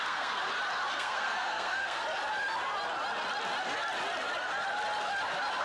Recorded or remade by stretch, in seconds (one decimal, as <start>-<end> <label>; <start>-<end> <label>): 0.0-0.4 remade; 0.4-0.9 recorded; 0.9-2.0 remade; 2.0-5.6 recorded